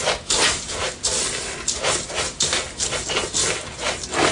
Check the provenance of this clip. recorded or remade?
recorded